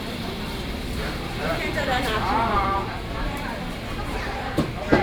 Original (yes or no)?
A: no